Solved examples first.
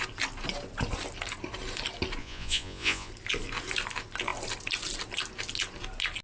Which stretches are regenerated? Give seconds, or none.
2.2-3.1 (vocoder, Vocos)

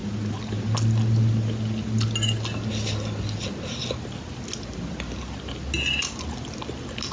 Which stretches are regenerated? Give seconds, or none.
none

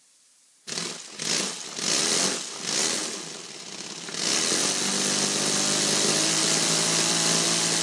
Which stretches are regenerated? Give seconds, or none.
none

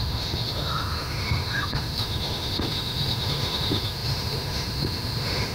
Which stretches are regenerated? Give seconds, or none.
0.0-5.5 (autoencoder, DAC-VAE)

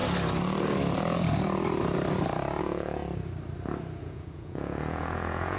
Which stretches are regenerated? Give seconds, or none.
2.6-3.0 (vocoder, Vocos); 4.0-5.6

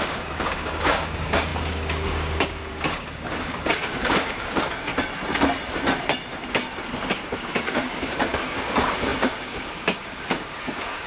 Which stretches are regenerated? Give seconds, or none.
0.0-4.9 (codec, DAC); 7.1-11.1

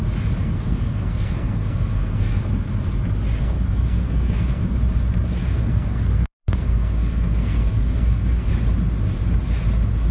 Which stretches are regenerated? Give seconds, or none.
0.4-2.4 (codec, SNAC); 3.4-4.6; 5.4-8.5